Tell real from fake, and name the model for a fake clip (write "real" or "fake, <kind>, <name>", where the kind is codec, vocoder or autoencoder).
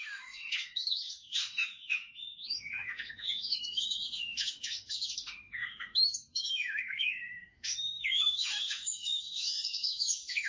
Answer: fake, autoencoder, DAC-VAE